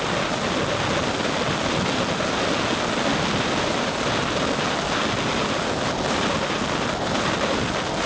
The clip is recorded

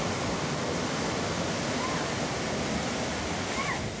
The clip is remade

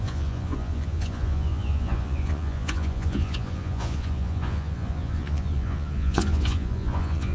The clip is remade